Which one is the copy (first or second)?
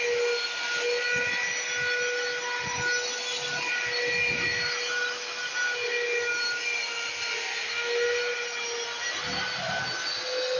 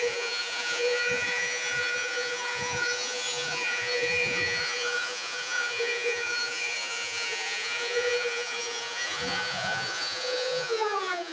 second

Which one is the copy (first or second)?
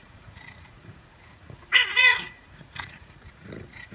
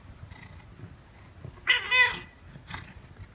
first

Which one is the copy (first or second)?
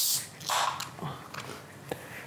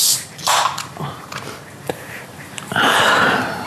second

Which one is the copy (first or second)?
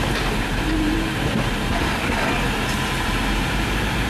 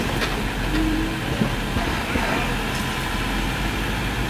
first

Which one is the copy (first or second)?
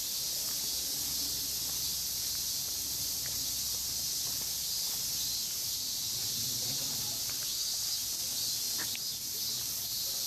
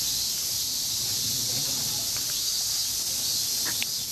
second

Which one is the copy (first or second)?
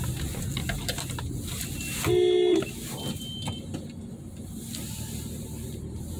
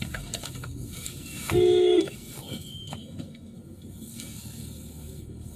second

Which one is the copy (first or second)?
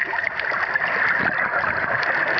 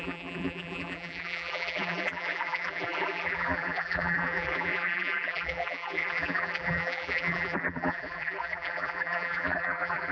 second